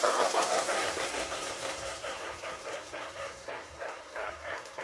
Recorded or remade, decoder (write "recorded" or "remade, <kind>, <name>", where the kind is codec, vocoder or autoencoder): remade, codec, SNAC